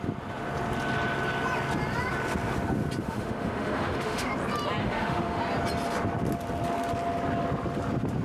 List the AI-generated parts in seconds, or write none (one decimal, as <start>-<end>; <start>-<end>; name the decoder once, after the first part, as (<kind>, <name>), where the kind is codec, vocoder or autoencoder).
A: 3.0-4.3 (autoencoder, DAC-VAE); 4.8-5.4